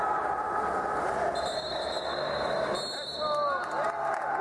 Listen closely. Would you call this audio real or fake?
real